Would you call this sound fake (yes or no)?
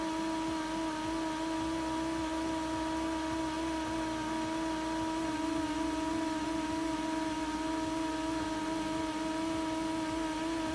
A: no